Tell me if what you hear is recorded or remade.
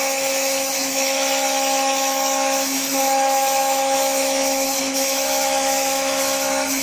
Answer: remade